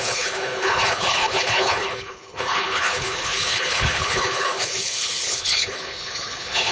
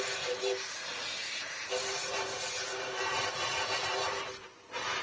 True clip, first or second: second